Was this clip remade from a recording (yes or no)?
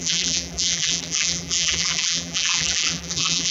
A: yes